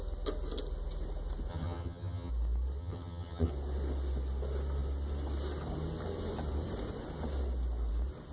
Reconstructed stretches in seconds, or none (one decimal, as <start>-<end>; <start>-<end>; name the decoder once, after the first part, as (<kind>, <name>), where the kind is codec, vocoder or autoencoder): 1.5-2.3 (vocoder, HiFi-GAN); 2.8-3.5